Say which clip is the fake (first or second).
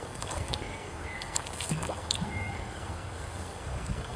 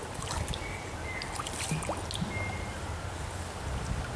first